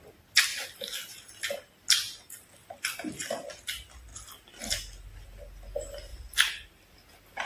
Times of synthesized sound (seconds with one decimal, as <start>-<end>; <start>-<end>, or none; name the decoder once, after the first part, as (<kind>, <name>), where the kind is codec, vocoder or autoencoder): none